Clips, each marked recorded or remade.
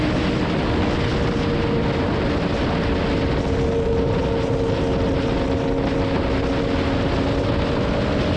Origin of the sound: recorded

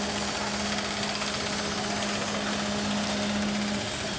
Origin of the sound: recorded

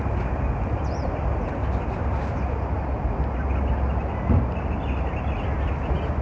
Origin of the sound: recorded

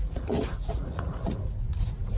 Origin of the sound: remade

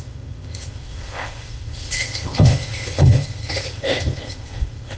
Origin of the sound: remade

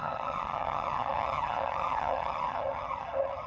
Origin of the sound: remade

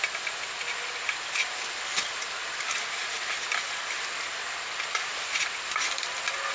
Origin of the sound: recorded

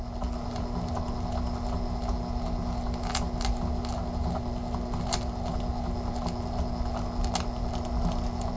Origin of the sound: recorded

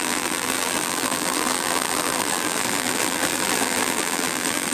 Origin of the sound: remade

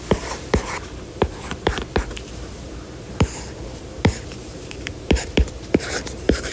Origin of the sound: remade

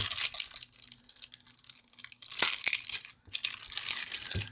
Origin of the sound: recorded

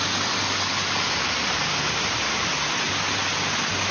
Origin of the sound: recorded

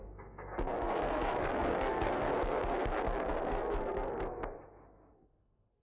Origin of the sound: remade